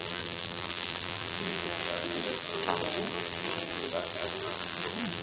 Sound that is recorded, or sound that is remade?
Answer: remade